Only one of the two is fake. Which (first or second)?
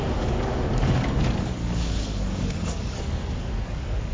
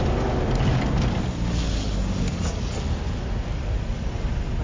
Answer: first